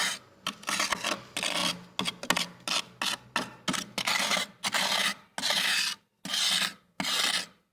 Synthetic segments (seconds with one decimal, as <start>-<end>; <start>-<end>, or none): none